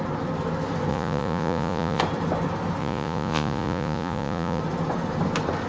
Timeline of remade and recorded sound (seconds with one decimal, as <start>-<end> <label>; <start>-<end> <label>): 0.0-0.9 recorded; 0.9-2.0 remade; 2.0-2.8 recorded; 2.8-4.6 remade; 4.6-5.7 recorded